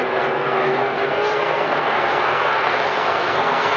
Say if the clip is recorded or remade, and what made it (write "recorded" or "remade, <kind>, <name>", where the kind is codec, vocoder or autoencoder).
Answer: remade, codec, SNAC